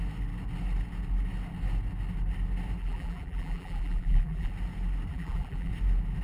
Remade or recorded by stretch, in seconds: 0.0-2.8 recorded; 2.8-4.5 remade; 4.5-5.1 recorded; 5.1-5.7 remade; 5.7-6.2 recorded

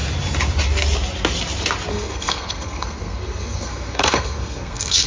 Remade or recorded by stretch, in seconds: 0.0-1.9 recorded; 1.9-5.1 remade

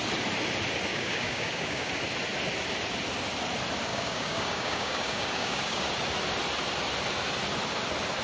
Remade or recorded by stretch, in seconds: 0.0-0.9 recorded; 0.9-1.9 remade; 1.9-3.9 recorded; 3.9-5.9 remade; 5.9-8.2 recorded